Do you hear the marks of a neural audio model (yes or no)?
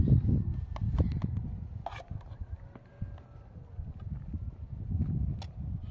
no